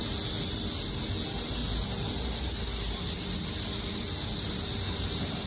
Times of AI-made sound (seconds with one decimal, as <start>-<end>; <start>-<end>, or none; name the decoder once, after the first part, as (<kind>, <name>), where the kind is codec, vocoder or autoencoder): none

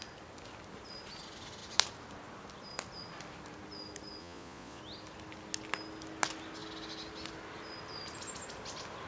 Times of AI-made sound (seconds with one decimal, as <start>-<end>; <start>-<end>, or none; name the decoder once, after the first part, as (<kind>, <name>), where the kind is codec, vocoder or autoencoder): 4.2-4.8 (vocoder, Vocos)

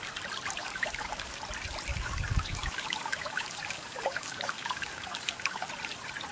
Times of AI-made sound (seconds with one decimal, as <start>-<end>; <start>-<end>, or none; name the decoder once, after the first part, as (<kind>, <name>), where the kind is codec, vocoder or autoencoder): 0.6-1.4 (codec, DAC); 1.9-5.7

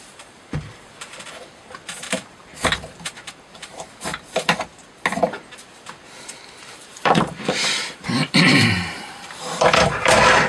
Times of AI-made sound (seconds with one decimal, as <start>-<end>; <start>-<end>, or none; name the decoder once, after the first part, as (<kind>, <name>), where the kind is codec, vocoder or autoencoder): 0.0-4.1 (vocoder, BigVGAN v2); 6.4-10.5

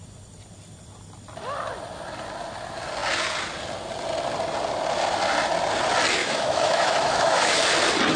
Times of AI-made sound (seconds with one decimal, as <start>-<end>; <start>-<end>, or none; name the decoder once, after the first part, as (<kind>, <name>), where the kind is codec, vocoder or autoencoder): 6.2-7.6 (autoencoder, DAC-VAE)

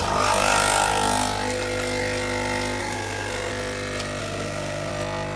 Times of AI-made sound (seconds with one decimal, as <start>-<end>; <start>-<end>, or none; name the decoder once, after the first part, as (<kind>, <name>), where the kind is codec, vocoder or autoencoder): 2.8-3.5 (codec, SNAC); 4.2-4.9

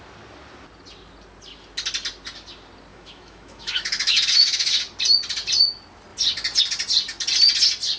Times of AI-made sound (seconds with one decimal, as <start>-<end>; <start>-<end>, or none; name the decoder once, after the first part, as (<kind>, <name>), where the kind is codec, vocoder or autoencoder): 2.9-4.8 (autoencoder, DAC-VAE)